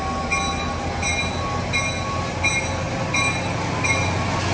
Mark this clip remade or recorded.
recorded